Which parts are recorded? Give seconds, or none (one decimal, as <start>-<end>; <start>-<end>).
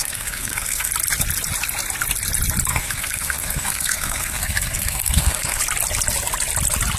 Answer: 0.9-2.7; 5.6-7.0